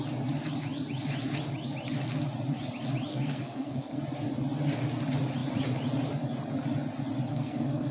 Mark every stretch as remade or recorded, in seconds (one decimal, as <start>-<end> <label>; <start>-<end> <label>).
0.0-3.1 recorded; 3.1-4.0 remade; 4.0-7.3 recorded; 7.3-7.9 remade